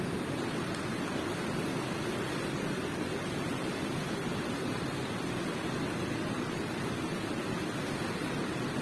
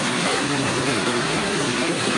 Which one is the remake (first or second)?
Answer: second